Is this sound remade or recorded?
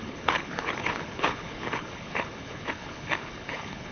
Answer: remade